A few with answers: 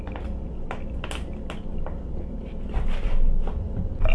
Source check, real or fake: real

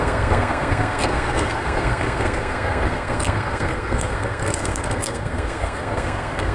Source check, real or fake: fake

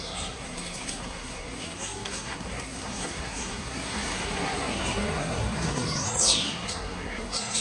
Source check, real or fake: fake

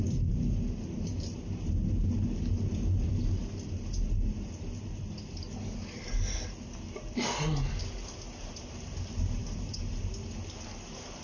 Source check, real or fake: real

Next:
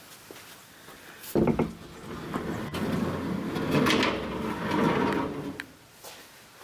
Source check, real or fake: real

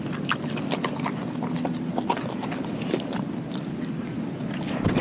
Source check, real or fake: real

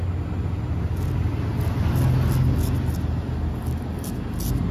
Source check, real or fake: real